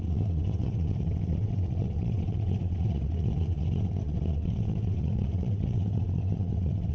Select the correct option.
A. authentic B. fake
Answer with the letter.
B